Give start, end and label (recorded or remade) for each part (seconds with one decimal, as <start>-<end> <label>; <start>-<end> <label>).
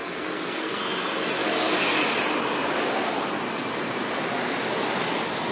0.0-0.8 remade; 0.8-5.5 recorded